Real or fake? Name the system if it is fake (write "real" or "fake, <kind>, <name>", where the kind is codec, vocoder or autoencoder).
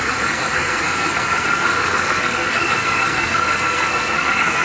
fake, codec, SNAC